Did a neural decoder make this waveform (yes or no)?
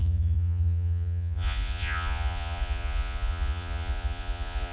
yes